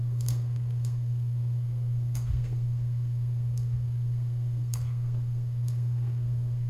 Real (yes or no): no